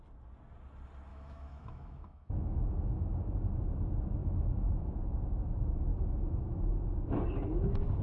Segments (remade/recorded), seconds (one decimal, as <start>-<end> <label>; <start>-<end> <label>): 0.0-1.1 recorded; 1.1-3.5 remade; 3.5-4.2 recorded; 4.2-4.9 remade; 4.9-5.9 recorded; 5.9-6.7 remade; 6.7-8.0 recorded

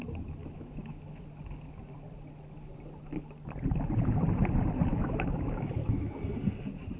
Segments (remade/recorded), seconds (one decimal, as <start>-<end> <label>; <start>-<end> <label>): 0.0-0.4 recorded; 0.4-1.2 remade; 1.2-4.9 recorded; 4.9-6.1 remade; 6.1-7.0 recorded

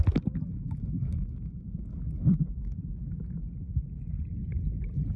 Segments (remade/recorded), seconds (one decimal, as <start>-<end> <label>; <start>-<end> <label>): 0.0-0.5 recorded; 0.5-1.8 remade; 1.8-5.2 recorded

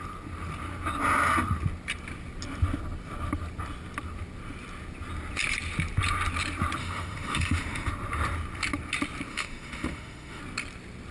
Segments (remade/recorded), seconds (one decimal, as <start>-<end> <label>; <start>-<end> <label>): 0.0-6.8 recorded; 6.8-7.9 remade; 7.9-9.3 recorded; 9.3-10.4 remade; 10.4-11.1 recorded

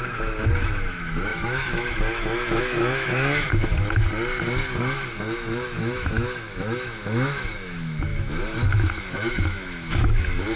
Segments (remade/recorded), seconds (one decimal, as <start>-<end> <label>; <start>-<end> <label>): 0.0-4.1 remade; 4.1-4.8 recorded; 4.8-10.6 remade